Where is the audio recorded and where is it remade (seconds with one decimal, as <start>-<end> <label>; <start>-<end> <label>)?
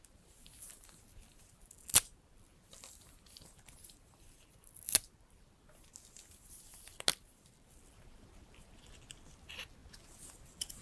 0.0-10.8 recorded